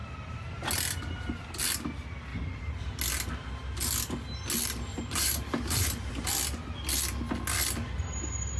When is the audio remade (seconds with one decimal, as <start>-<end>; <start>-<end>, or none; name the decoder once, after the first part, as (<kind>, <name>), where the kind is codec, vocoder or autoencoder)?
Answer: 2.3-3.0 (vocoder, BigVGAN v2); 4.9-6.1